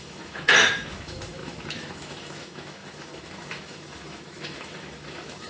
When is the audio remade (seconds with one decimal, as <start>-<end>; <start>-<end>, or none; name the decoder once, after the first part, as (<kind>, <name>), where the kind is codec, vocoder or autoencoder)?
0.0-5.5 (autoencoder, DAC-VAE)